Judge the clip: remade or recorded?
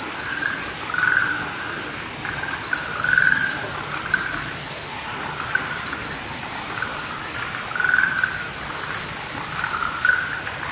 recorded